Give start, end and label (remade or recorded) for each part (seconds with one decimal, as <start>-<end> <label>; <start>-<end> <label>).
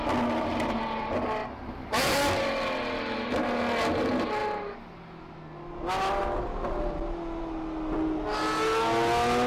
0.0-9.5 recorded